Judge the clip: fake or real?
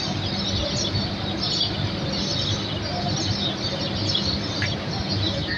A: real